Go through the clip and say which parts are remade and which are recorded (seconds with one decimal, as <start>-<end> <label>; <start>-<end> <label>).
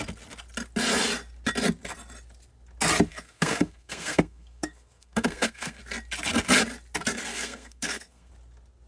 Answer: 0.0-3.1 recorded; 3.1-5.8 remade; 5.8-7.3 recorded; 7.3-8.3 remade; 8.3-8.9 recorded